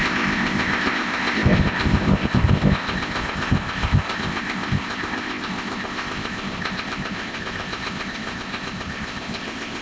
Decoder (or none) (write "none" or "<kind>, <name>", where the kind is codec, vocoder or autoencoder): codec, ZipCodec